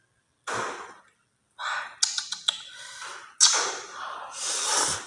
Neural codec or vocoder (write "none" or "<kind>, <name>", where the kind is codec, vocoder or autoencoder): none